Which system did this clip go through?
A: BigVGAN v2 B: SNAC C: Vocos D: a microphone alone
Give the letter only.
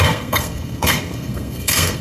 B